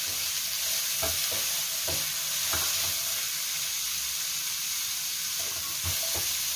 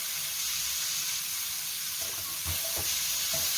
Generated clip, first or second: second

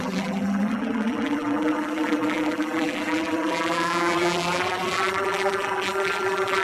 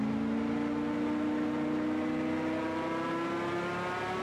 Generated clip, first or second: first